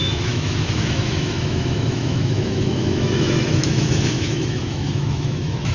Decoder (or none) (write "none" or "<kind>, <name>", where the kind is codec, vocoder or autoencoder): autoencoder, DAC-VAE